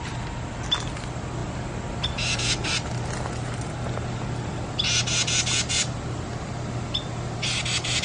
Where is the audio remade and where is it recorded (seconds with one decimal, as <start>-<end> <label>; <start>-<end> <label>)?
0.0-8.0 recorded